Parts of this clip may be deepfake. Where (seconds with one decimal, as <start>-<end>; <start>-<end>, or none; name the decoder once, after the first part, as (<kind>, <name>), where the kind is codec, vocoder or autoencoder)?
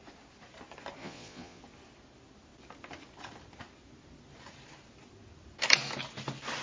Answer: 1.0-1.6 (vocoder, Vocos)